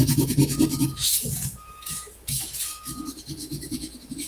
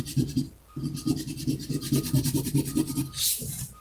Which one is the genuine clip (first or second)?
second